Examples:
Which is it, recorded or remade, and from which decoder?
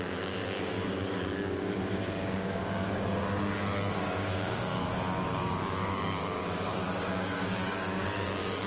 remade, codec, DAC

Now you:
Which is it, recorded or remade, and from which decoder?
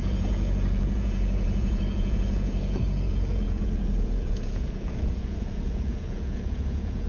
remade, vocoder, Vocos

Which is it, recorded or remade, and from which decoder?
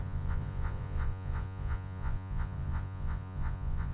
remade, vocoder, Vocos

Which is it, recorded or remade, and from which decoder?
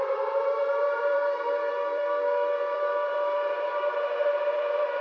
remade, vocoder, BigVGAN v2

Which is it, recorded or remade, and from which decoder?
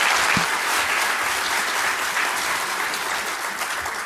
recorded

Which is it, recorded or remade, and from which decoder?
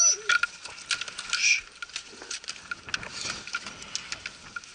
recorded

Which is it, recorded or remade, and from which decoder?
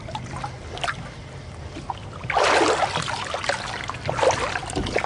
recorded